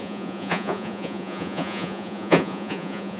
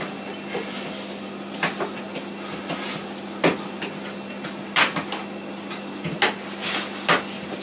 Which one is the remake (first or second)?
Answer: first